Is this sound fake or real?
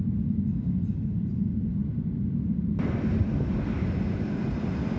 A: real